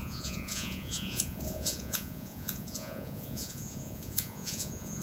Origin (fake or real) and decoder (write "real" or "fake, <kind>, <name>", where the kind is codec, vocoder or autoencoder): fake, vocoder, Vocos